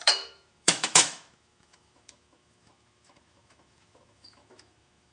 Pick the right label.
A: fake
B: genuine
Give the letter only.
A